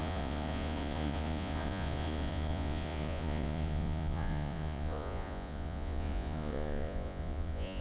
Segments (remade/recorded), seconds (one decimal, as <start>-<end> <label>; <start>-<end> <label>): 0.0-7.8 remade